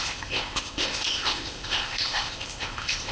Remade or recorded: remade